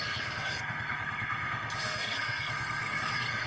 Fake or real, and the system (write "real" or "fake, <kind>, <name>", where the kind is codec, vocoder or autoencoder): fake, codec, SNAC